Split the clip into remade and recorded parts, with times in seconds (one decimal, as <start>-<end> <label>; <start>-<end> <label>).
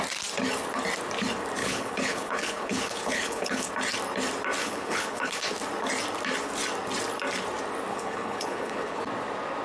0.0-1.6 recorded; 1.6-3.7 remade; 3.7-4.6 recorded; 4.6-5.5 remade; 5.5-7.9 recorded; 7.9-9.0 remade; 9.0-9.6 recorded